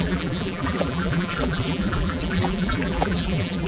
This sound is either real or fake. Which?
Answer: fake